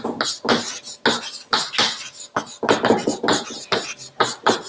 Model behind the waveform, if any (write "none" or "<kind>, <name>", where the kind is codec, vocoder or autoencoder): none